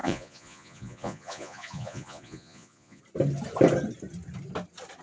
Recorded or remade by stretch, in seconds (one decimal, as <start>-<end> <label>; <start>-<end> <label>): 0.0-3.0 remade; 3.0-5.0 recorded

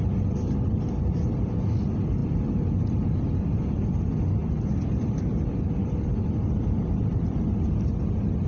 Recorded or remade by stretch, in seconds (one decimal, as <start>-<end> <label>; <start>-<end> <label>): 0.0-4.4 recorded; 4.4-8.0 remade; 8.0-8.5 recorded

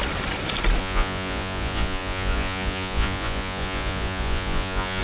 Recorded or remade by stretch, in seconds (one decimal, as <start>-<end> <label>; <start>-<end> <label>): 0.0-0.8 recorded; 0.8-5.0 remade

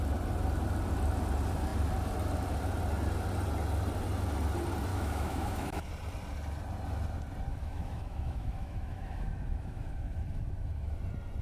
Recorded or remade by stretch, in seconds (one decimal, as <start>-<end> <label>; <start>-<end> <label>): 0.0-4.9 recorded; 4.9-5.9 remade; 5.9-7.5 recorded; 7.5-11.0 remade; 11.0-11.4 recorded

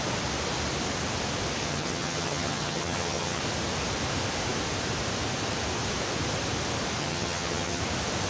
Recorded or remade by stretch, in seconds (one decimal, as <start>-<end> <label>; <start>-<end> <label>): 0.0-1.6 recorded; 1.6-3.4 remade; 3.4-7.0 recorded; 7.0-7.8 remade; 7.8-8.3 recorded

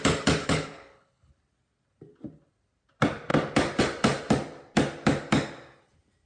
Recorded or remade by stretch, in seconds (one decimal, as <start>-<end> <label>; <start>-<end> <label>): 0.0-0.4 recorded; 0.4-1.3 remade; 1.3-6.3 recorded